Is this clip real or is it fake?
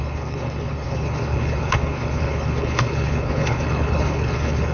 fake